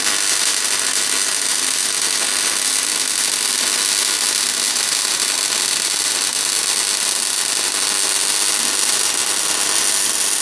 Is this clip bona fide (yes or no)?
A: yes